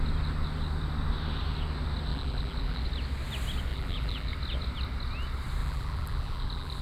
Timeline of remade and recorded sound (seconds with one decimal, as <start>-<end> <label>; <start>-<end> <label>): 0.0-2.1 recorded; 2.1-2.8 remade; 2.8-3.7 recorded; 3.7-4.3 remade; 4.3-5.6 recorded; 5.6-6.8 remade